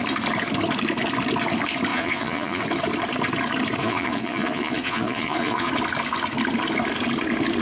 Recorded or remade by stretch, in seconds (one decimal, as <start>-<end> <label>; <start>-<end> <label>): 0.0-1.9 recorded; 1.9-2.6 remade; 2.6-3.8 recorded; 3.8-5.7 remade; 5.7-7.6 recorded